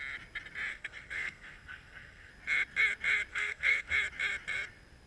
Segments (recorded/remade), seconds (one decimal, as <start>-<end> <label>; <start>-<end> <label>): 0.0-0.7 recorded; 0.7-2.3 remade; 2.3-3.3 recorded; 3.3-3.9 remade; 3.9-5.1 recorded

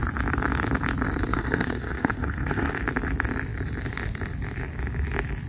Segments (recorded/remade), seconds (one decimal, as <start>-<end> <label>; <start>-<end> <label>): 0.0-1.3 recorded; 1.3-2.7 remade; 2.7-5.5 recorded

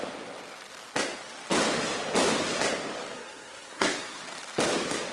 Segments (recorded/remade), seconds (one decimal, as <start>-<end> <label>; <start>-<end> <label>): 0.0-3.1 recorded; 3.1-4.2 remade; 4.2-5.1 recorded

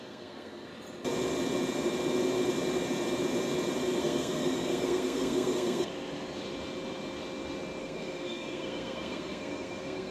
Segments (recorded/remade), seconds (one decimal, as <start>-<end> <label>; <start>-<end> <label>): 0.0-0.7 remade; 0.7-4.0 recorded; 4.0-5.9 remade; 5.9-7.8 recorded; 7.8-10.1 remade

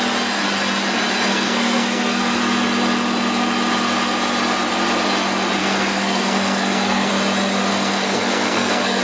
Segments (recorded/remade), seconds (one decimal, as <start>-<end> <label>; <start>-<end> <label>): 0.0-1.3 recorded; 1.3-2.4 remade; 2.4-5.6 recorded; 5.6-7.1 remade; 7.1-7.7 recorded; 7.7-9.0 remade

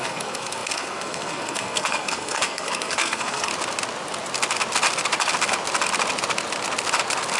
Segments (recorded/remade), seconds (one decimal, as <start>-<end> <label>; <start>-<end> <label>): 0.0-3.5 remade; 3.5-7.4 recorded

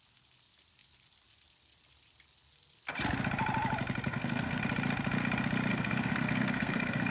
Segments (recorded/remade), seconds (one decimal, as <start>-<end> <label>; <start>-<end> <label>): 0.0-4.1 recorded; 4.1-4.6 remade; 4.6-5.7 recorded; 5.7-7.1 remade